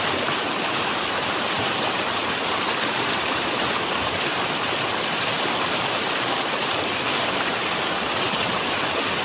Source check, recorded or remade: remade